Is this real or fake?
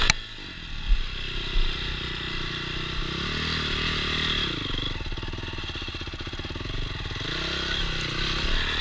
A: real